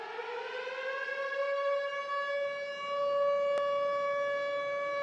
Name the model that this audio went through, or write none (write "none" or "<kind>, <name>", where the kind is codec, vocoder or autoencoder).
none